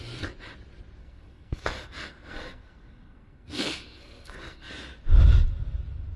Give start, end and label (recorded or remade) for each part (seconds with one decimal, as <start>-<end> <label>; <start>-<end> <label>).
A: 0.0-1.0 recorded; 1.0-4.7 remade; 4.7-6.2 recorded